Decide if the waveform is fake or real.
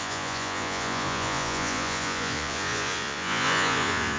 fake